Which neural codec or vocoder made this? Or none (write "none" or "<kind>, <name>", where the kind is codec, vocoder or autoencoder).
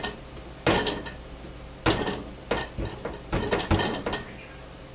none